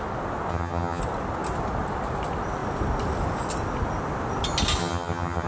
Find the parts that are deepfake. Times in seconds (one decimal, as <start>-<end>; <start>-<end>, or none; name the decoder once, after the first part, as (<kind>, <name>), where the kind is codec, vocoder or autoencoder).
0.5-1.0 (vocoder, HiFi-GAN); 4.8-5.5